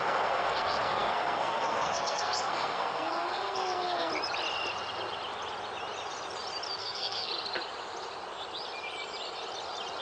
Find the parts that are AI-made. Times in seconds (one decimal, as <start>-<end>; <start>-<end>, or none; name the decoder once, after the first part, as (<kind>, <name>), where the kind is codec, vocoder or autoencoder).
0.0-4.1 (codec, SNAC); 6.8-7.3